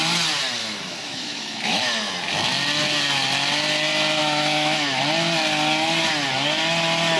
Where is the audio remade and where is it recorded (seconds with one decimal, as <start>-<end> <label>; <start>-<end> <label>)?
0.0-0.6 recorded; 0.6-2.1 remade; 2.1-4.2 recorded; 4.2-5.0 remade; 5.0-7.2 recorded